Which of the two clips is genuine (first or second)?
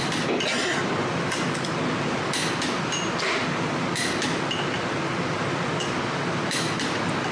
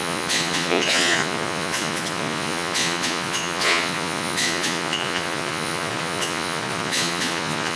first